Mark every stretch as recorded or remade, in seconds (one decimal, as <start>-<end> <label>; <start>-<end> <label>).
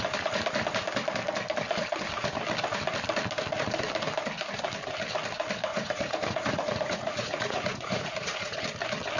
0.0-5.7 recorded; 5.7-8.6 remade; 8.6-9.2 recorded